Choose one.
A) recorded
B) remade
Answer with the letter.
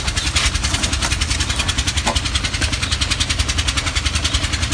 A